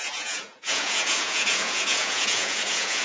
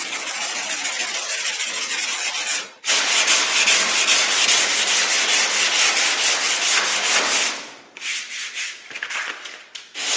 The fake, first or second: first